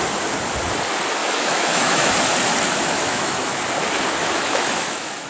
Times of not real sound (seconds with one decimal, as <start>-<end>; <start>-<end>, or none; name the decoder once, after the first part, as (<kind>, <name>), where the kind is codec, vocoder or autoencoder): 1.2-2.1 (autoencoder, DAC-VAE); 2.7-3.6; 4.2-5.3